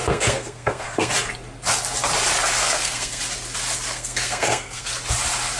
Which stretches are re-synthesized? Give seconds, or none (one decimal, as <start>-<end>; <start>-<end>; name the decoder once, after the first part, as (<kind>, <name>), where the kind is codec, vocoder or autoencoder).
0.0-1.1 (codec, SNAC); 2.6-3.2; 3.9-4.9